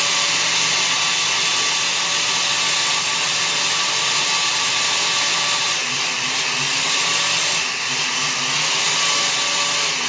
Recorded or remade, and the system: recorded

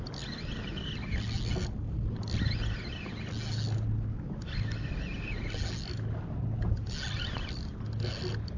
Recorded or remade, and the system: recorded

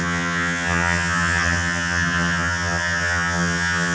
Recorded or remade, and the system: remade, vocoder, HiFi-GAN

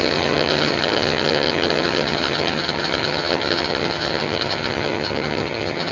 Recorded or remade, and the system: remade, vocoder, HiFi-GAN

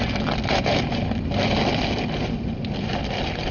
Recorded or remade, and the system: recorded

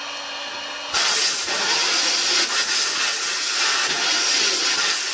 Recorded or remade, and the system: recorded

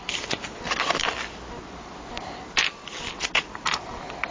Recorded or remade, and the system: recorded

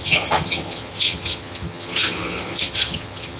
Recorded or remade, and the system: remade, vocoder, HiFi-GAN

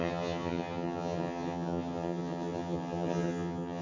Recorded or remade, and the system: remade, vocoder, HiFi-GAN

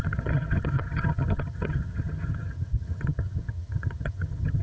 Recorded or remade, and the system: remade, vocoder, HiFi-GAN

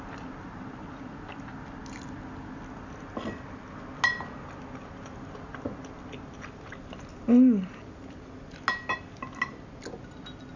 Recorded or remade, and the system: recorded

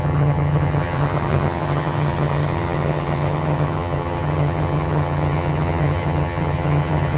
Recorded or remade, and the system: remade, vocoder, HiFi-GAN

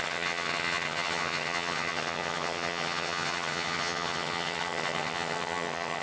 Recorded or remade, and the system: remade, vocoder, HiFi-GAN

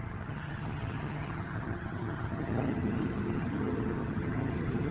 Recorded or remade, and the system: remade, vocoder, HiFi-GAN